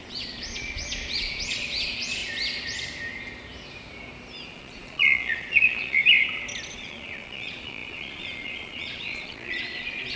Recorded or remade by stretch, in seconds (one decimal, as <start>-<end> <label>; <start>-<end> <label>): 0.0-2.2 remade; 2.2-4.5 recorded; 4.5-6.0 remade; 6.0-6.7 recorded; 6.7-10.2 remade